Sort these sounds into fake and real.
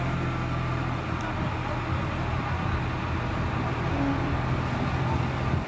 real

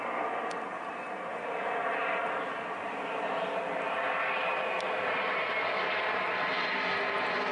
real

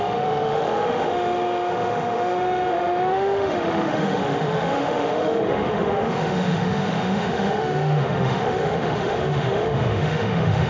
fake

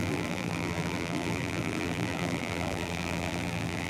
fake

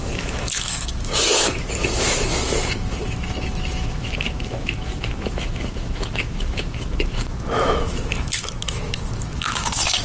fake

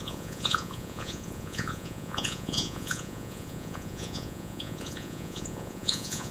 fake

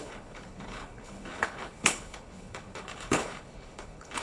fake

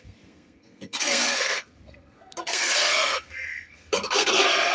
fake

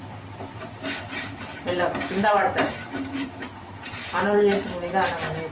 fake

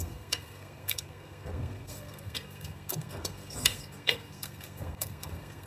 fake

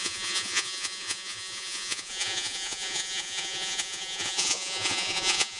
fake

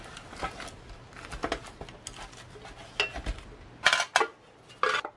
real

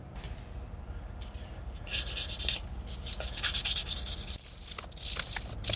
real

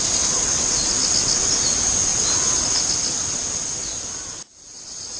real